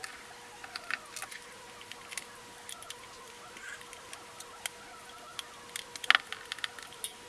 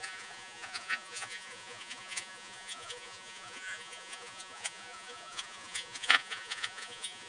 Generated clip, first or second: second